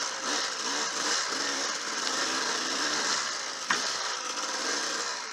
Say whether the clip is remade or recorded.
remade